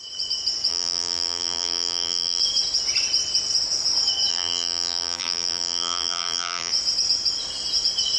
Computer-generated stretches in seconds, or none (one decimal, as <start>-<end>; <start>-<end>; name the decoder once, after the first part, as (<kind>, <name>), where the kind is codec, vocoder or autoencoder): 0.7-2.4 (vocoder, BigVGAN v2); 4.3-6.7